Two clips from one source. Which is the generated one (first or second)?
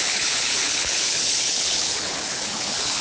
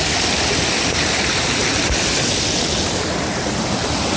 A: first